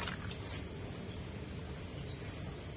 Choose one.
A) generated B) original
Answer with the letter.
B